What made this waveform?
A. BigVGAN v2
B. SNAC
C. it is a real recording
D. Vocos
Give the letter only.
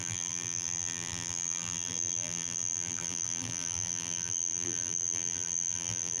A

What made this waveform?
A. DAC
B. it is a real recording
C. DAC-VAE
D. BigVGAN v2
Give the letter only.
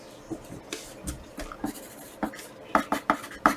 D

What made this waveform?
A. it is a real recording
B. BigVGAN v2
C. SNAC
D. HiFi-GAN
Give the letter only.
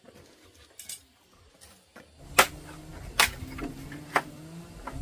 A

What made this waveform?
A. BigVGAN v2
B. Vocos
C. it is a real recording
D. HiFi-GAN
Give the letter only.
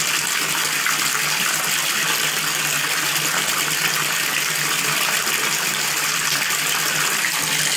C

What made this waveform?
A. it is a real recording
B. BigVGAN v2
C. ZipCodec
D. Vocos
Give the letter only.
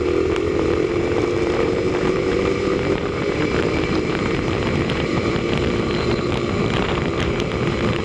B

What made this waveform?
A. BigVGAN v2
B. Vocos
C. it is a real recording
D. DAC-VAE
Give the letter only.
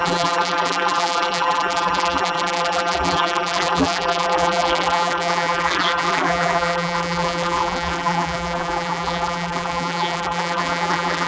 A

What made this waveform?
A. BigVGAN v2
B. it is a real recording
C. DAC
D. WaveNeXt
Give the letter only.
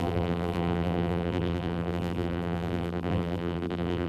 A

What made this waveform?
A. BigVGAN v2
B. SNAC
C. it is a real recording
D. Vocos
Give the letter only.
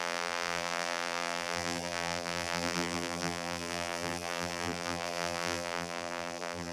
A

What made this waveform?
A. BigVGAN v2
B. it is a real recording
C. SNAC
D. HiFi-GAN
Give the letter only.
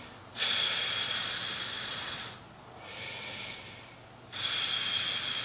B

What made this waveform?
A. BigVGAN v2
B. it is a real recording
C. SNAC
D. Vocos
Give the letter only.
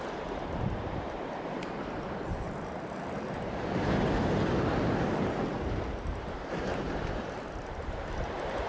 A